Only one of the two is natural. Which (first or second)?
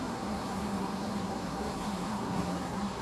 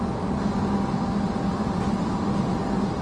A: second